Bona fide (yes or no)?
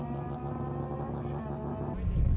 yes